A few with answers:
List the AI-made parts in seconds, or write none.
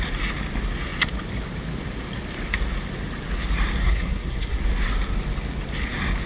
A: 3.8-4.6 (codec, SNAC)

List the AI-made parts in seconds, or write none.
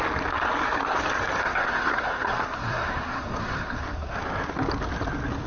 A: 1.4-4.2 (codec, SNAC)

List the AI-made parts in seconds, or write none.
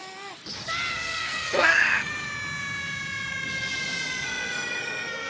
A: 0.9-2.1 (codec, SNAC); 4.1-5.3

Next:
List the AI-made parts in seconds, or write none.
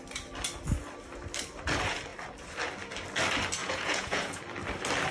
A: 3.6-4.4 (vocoder, Vocos)